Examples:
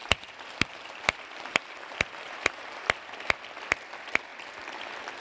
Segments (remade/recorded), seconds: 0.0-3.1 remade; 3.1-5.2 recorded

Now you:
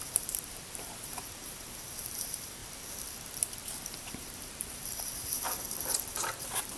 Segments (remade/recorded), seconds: 0.0-2.6 remade; 2.6-3.8 recorded; 3.8-6.8 remade

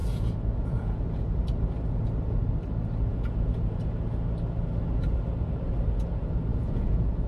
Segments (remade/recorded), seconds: 0.0-1.0 remade; 1.0-3.1 recorded; 3.1-3.8 remade; 3.8-6.5 recorded; 6.5-7.3 remade

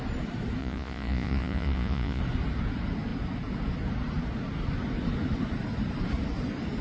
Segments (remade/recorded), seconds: 0.0-0.6 recorded; 0.6-2.2 remade; 2.2-6.8 recorded

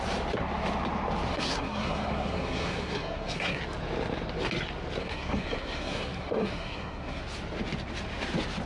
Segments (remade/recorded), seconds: 0.0-1.3 recorded; 1.3-3.6 remade; 3.6-5.0 recorded; 5.0-7.2 remade; 7.2-8.7 recorded